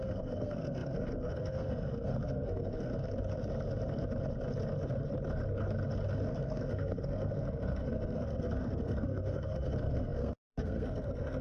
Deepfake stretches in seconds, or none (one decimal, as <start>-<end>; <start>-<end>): 0.0-2.9; 6.3-11.4

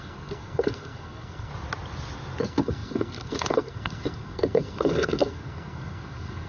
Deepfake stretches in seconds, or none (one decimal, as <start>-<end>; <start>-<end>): 0.0-1.5; 2.4-6.5

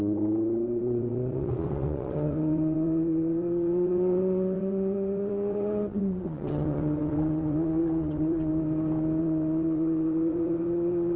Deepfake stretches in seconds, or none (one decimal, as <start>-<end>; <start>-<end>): 0.0-8.5; 9.2-11.2

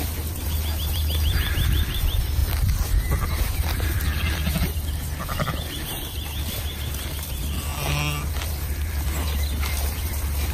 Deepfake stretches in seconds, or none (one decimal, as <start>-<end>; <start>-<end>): 0.0-2.4; 3.4-7.7; 8.3-10.5